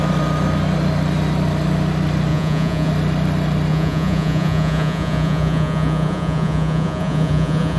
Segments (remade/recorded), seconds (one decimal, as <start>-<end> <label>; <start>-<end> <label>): 0.0-2.3 recorded; 2.3-2.9 remade; 2.9-3.7 recorded; 3.7-7.8 remade